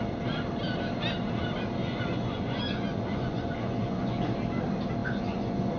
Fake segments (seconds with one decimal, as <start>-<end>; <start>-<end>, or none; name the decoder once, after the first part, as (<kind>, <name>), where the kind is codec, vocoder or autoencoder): 1.8-4.3 (vocoder, Vocos); 5.0-5.8